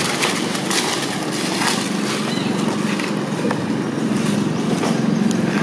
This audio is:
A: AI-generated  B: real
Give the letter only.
B